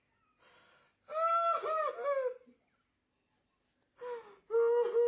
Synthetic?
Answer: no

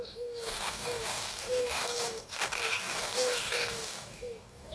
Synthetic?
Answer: yes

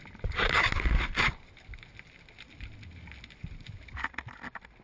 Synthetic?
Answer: no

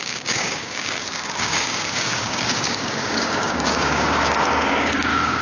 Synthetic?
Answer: yes